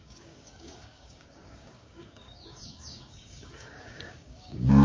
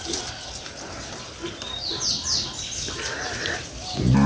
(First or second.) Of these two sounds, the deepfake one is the first